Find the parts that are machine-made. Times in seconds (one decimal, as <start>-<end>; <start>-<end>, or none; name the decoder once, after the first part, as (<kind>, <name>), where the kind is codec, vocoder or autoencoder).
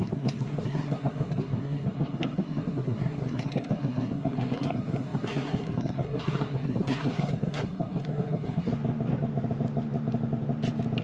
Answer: 0.0-8.7 (codec, SNAC)